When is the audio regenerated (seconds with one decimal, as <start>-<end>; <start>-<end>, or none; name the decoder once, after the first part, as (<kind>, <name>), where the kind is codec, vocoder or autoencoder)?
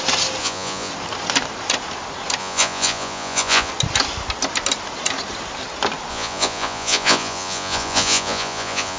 0.4-0.9 (vocoder, Vocos); 2.4-3.7; 6.1-9.0